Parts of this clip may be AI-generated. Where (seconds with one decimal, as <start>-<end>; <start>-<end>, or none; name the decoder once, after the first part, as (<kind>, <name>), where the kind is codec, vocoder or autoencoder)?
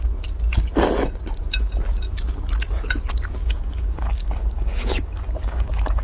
3.4-6.0 (codec, DAC)